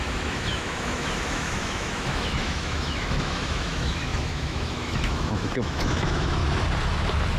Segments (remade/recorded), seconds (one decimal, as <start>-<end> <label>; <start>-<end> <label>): 0.0-6.4 remade; 6.4-7.4 recorded